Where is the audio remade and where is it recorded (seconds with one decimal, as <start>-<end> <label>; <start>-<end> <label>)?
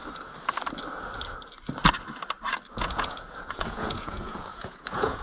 0.0-2.8 recorded; 2.8-5.2 remade